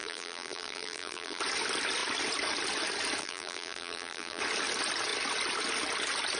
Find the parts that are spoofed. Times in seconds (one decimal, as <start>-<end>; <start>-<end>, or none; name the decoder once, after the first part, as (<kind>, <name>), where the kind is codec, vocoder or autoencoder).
0.0-1.4 (vocoder, BigVGAN v2); 3.2-4.4